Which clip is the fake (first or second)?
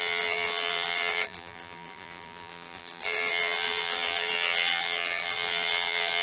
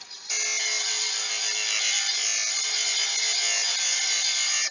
first